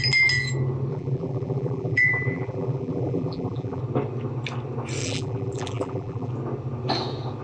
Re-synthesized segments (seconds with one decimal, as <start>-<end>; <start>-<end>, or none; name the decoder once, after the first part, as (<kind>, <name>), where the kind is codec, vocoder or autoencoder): 0.9-3.8 (vocoder, BigVGAN v2); 5.0-6.3